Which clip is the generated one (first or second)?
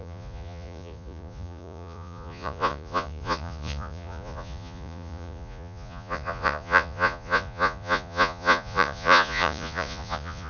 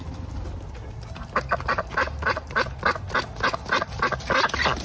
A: first